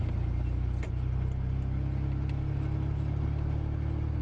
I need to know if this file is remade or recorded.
recorded